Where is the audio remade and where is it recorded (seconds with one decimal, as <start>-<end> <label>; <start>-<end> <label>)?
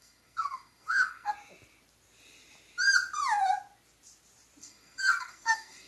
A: 0.0-1.3 remade; 1.3-4.6 recorded; 4.6-5.9 remade